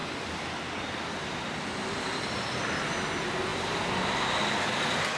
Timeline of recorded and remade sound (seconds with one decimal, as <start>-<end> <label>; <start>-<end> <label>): 0.0-5.2 recorded